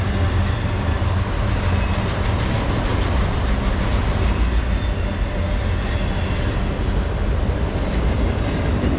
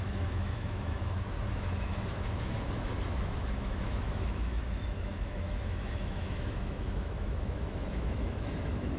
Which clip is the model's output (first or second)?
second